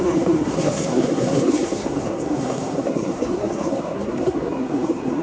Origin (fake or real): fake